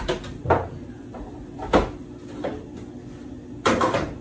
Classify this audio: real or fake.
real